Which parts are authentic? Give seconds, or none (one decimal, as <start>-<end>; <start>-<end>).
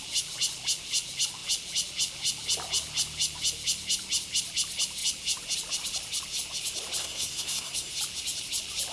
0.0-7.0; 7.9-8.9